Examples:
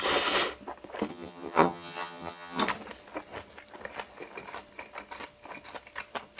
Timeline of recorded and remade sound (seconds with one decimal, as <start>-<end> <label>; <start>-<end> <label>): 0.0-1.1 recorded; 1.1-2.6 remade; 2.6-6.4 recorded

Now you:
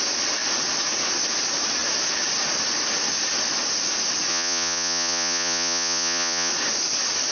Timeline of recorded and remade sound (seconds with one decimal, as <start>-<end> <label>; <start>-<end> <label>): 0.0-4.3 recorded; 4.3-6.5 remade; 6.5-7.3 recorded

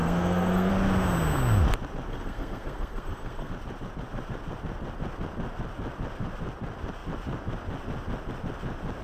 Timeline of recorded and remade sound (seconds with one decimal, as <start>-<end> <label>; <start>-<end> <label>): 0.0-0.7 remade; 0.7-2.1 recorded; 2.1-3.5 remade; 3.5-9.0 recorded

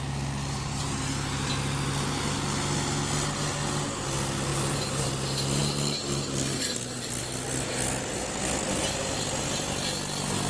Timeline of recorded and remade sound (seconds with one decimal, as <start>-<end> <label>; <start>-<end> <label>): 0.0-0.4 recorded; 0.4-1.5 remade; 1.5-4.5 recorded; 4.5-5.1 remade; 5.1-10.5 recorded

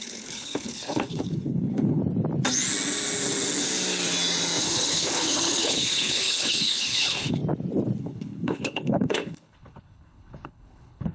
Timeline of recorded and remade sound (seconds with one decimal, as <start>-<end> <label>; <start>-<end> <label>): 0.0-2.0 remade; 2.0-4.6 recorded; 4.6-7.4 remade; 7.4-8.0 recorded; 8.0-11.1 remade

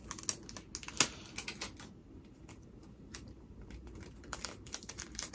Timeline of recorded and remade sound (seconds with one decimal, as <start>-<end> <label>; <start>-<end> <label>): 0.0-2.0 recorded; 2.0-5.3 remade

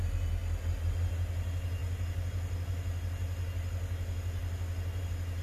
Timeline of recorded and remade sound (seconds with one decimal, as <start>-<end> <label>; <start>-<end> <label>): 0.0-5.4 recorded